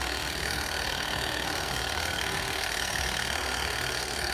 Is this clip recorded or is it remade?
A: remade